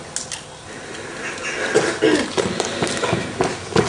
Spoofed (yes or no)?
no